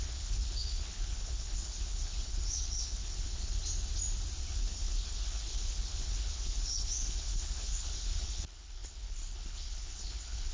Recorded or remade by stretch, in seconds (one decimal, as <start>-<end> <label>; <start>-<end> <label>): 0.0-3.6 remade; 3.6-4.5 recorded; 4.5-10.5 remade